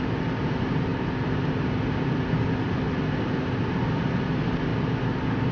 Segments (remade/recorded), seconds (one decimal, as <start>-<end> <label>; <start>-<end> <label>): 0.0-5.5 recorded